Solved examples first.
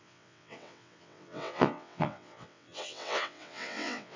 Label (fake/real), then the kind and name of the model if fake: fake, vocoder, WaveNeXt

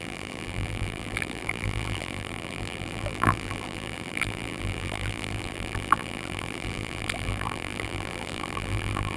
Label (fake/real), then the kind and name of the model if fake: fake, vocoder, BigVGAN v2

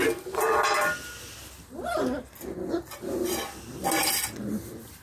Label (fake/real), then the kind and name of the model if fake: real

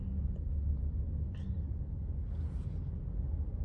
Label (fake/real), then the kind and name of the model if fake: real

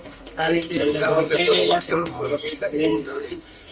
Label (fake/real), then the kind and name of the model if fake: fake, codec, SNAC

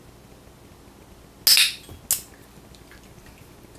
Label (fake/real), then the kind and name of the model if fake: real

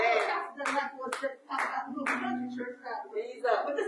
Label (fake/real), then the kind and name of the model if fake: real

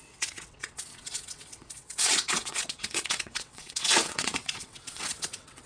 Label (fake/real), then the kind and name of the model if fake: fake, vocoder, WaveNeXt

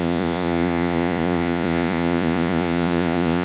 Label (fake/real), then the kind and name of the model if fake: fake, vocoder, Vocos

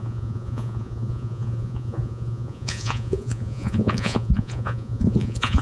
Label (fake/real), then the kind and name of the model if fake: fake, vocoder, Vocos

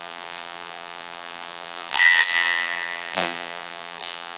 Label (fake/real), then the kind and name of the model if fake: fake, vocoder, BigVGAN v2